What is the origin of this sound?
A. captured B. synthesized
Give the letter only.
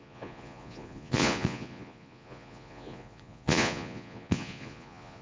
B